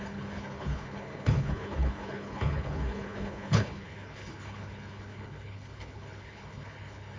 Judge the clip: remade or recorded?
remade